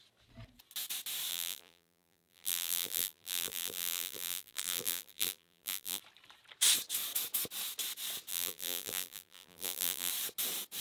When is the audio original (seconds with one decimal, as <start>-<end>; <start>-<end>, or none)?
0.0-1.3; 6.0-8.3; 10.1-10.8